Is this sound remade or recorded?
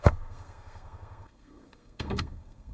remade